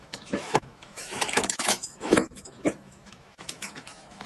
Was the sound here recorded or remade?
remade